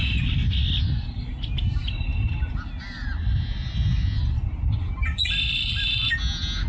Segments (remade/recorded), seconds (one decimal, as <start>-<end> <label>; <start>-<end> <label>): 0.0-6.7 recorded